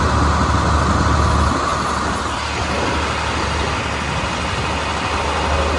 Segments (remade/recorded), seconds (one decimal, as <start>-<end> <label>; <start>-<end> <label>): 0.0-5.8 recorded